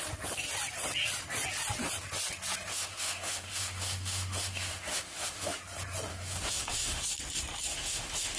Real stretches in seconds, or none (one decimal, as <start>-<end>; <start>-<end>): 0.0-2.7; 5.6-6.1; 7.0-7.7